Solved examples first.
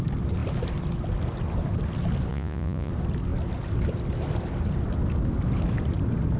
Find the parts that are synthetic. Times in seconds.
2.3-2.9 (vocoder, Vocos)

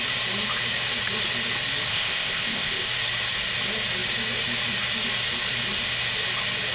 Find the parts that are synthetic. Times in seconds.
1.9-2.9 (codec, ZipCodec)

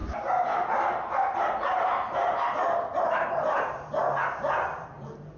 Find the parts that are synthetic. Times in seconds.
3.0-4.0 (vocoder, BigVGAN v2)